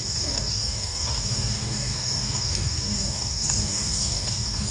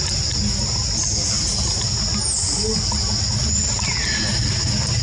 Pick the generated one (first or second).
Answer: first